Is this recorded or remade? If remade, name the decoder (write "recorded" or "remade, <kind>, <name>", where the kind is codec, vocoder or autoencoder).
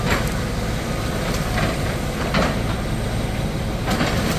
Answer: remade, vocoder, BigVGAN v2